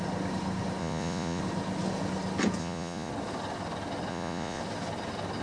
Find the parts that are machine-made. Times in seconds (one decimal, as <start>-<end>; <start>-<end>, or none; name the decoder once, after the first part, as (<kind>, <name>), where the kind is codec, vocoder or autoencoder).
0.8-1.4 (vocoder, Vocos); 2.6-3.1; 4.1-4.6